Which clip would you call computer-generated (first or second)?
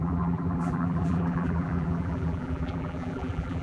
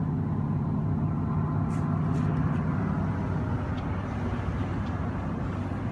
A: first